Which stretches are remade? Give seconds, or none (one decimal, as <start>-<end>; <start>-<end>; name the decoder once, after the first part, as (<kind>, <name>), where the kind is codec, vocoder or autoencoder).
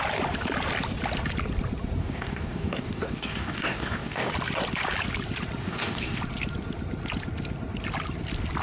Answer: 2.0-4.3 (codec, DAC); 5.6-6.2